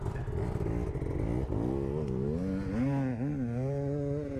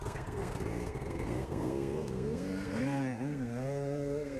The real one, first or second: first